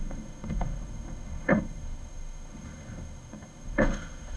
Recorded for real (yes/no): no